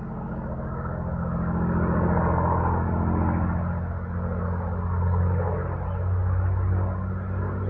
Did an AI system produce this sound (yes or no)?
no